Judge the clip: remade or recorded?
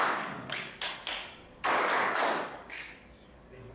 remade